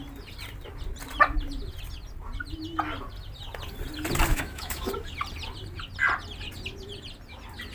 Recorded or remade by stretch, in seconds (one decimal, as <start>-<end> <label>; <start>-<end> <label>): 0.0-4.3 recorded; 4.3-4.9 remade; 4.9-7.7 recorded